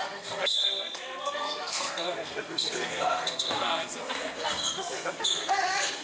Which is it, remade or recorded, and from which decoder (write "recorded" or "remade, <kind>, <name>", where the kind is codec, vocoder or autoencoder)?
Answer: remade, codec, SNAC